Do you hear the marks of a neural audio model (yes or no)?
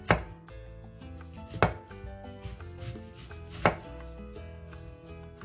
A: no